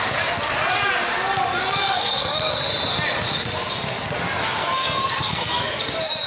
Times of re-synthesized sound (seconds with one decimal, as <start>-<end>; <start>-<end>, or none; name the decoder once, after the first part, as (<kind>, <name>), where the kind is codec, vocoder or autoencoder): 1.8-2.7 (codec, SNAC); 4.6-5.5

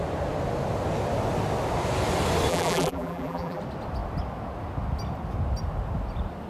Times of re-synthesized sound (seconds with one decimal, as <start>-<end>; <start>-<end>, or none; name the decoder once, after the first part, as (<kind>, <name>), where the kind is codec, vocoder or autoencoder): 2.5-3.6 (vocoder, BigVGAN v2)

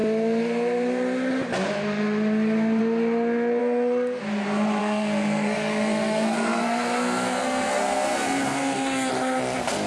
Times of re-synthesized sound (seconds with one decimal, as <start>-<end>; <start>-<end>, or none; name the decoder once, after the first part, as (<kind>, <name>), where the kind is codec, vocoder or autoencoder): 3.6-4.2 (codec, SNAC); 4.8-9.1

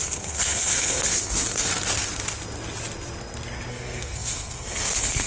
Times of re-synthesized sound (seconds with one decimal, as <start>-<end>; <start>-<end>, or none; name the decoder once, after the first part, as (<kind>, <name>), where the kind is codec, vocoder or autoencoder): 0.0-1.7 (codec, SNAC); 3.7-5.3